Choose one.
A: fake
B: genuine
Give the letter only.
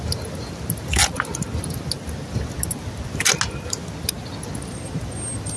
B